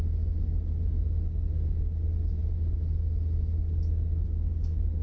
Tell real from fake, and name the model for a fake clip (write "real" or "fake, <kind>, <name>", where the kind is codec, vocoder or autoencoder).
real